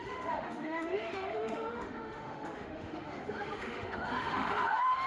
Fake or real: fake